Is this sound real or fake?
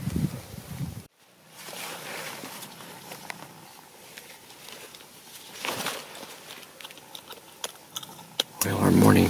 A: fake